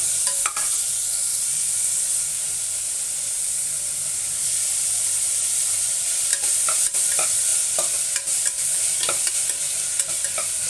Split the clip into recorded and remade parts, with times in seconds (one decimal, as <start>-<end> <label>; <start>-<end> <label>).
0.0-10.7 recorded